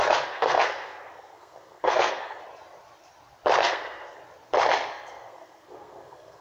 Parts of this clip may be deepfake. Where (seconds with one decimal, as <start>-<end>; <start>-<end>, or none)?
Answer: 0.0-2.4; 3.6-4.2; 4.9-6.4